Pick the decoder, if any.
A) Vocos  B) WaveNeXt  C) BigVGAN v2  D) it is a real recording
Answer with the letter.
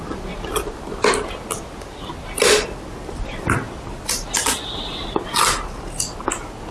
D